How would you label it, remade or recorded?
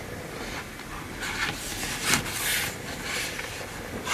recorded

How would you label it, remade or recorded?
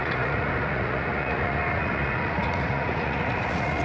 remade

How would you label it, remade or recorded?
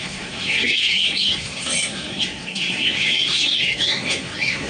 remade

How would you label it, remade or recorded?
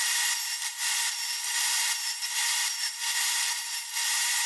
remade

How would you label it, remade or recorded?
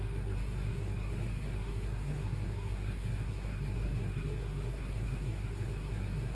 remade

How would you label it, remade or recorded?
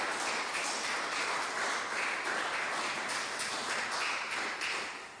recorded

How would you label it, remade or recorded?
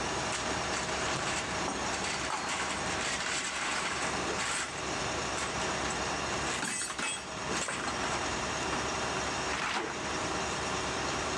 remade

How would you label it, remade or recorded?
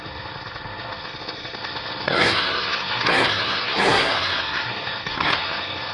remade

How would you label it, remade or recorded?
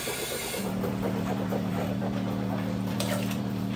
remade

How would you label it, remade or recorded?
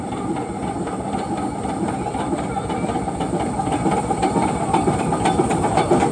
recorded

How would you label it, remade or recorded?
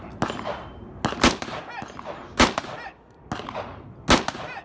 recorded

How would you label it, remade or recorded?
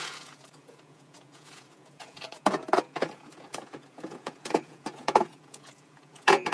remade